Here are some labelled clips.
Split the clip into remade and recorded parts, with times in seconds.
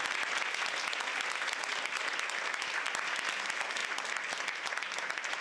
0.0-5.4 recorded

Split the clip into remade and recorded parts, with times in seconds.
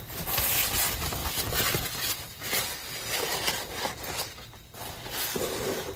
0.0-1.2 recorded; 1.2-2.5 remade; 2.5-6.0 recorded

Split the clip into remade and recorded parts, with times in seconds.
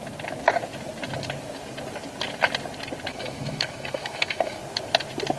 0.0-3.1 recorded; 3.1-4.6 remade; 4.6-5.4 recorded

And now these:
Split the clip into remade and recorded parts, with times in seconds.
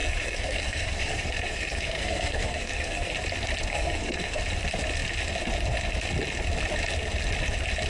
0.0-3.1 remade; 3.1-3.7 recorded; 3.7-4.4 remade; 4.4-7.9 recorded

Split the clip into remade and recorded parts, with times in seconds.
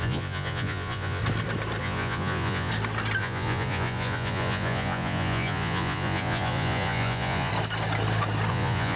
0.0-1.2 remade; 1.2-1.8 recorded; 1.8-2.7 remade; 2.7-3.2 recorded; 3.2-7.5 remade; 7.5-8.5 recorded; 8.5-9.0 remade